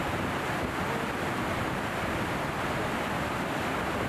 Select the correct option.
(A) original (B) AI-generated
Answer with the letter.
B